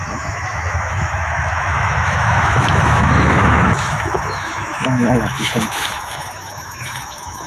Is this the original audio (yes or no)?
no